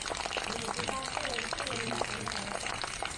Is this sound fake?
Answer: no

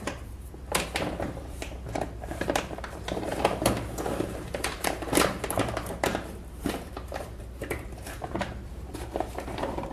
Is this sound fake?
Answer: yes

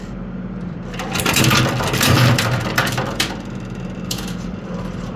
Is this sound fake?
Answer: yes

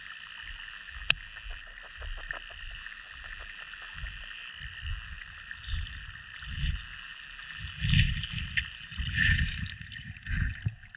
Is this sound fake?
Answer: no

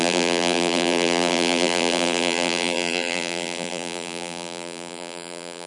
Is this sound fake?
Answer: yes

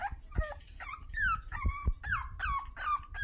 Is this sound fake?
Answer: no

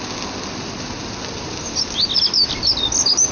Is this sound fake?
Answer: no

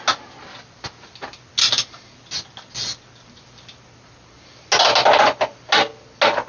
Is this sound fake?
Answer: no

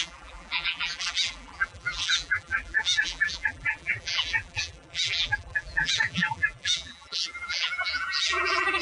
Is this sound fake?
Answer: yes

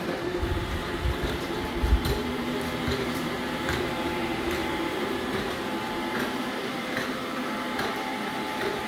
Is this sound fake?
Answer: yes